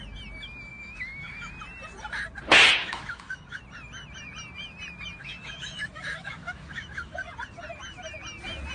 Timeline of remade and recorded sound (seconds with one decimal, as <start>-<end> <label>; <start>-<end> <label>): 0.0-0.7 recorded; 0.7-1.5 remade; 1.5-2.8 recorded; 2.8-3.6 remade; 3.6-5.2 recorded; 5.2-7.1 remade; 7.1-8.7 recorded